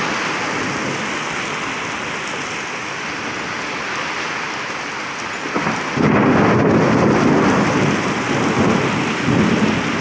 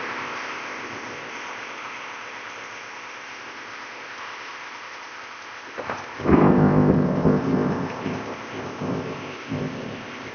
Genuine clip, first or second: first